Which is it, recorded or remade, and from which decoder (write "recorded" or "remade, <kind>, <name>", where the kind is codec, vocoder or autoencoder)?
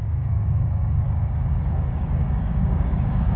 remade, codec, DAC